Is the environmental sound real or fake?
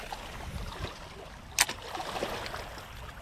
real